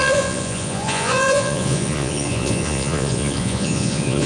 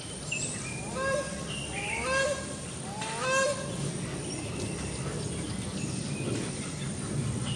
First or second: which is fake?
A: first